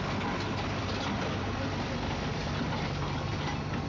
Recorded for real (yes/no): yes